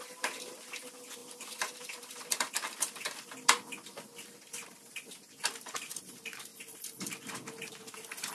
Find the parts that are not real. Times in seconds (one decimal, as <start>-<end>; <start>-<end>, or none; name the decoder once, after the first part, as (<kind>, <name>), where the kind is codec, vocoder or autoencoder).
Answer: 0.0-8.3 (vocoder, BigVGAN v2)

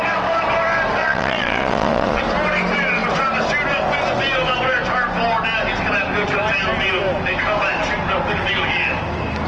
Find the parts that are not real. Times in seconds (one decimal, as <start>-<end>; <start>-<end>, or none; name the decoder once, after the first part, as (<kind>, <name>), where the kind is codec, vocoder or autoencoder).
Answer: 1.0-2.2 (vocoder, Vocos)